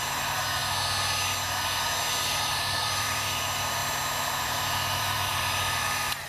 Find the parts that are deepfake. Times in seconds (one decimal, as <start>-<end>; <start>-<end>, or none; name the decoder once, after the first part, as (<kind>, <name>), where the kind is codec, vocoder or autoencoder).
0.0-0.6 (vocoder, BigVGAN v2); 2.2-3.8; 4.4-6.3

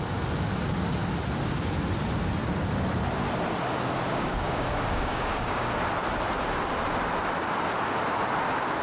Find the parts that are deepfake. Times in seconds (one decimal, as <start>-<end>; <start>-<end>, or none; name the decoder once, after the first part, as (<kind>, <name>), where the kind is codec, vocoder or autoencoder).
4.1-5.7 (codec, DAC)

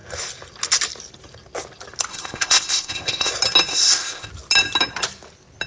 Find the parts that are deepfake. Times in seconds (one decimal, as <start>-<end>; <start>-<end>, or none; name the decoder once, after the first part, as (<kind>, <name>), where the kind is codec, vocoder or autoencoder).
2.1-3.3 (codec, ZipCodec); 3.7-4.3